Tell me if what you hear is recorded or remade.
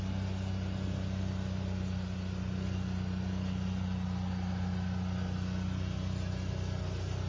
recorded